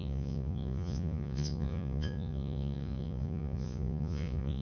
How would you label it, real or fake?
fake